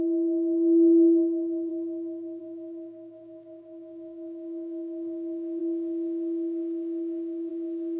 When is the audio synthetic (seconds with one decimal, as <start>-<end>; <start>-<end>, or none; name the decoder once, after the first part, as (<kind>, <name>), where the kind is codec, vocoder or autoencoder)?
0.0-1.7 (codec, DAC); 2.4-8.0